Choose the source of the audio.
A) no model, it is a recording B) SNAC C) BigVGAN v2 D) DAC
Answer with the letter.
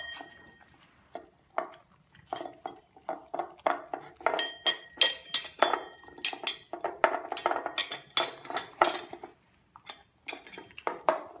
A